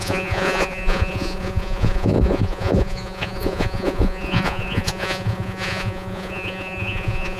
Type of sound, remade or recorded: remade